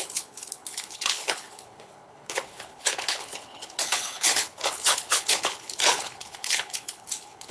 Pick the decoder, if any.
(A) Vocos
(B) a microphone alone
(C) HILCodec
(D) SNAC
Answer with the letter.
C